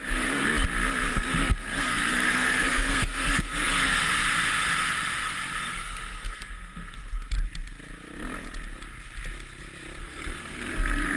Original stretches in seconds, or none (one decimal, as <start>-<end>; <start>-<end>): 0.5-1.1; 4.1-5.6; 7.0-10.0